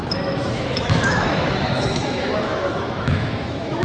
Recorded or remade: remade